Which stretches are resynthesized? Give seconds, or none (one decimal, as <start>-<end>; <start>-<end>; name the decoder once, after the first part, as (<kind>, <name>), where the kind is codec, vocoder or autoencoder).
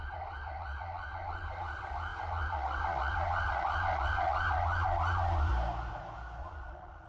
0.0-5.5 (vocoder, Vocos); 6.4-7.1